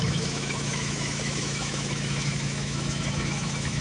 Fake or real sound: fake